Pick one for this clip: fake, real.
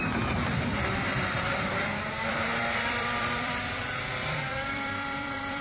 fake